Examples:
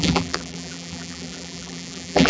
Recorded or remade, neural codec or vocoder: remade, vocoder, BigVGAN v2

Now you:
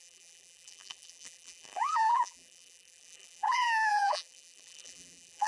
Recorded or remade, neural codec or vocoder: remade, vocoder, BigVGAN v2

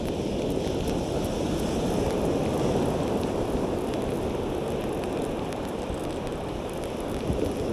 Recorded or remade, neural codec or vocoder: recorded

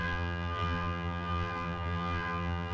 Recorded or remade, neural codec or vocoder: remade, vocoder, BigVGAN v2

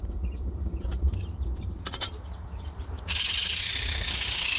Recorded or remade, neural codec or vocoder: remade, vocoder, BigVGAN v2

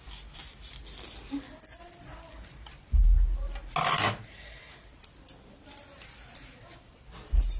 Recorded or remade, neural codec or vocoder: recorded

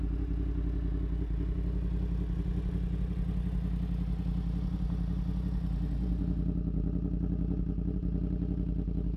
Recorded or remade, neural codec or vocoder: recorded